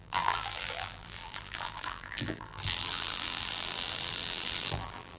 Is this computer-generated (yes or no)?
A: yes